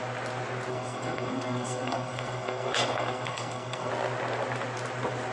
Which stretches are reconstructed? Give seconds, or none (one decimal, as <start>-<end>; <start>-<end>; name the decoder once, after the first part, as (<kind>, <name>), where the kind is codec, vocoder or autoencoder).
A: 0.7-3.9 (codec, SNAC)